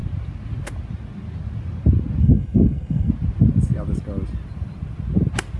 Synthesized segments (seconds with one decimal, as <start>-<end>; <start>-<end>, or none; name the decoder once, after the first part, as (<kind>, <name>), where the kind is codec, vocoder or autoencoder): 2.2-3.1 (codec, SNAC)